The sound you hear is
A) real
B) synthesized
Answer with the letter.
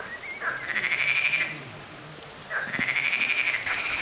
A